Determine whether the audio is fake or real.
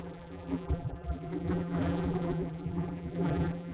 fake